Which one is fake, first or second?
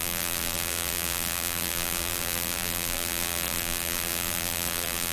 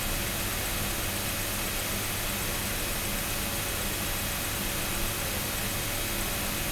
first